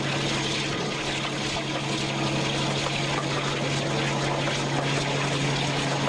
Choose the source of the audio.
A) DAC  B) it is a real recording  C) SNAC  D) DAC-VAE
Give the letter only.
B